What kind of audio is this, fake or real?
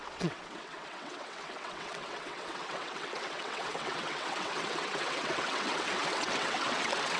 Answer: fake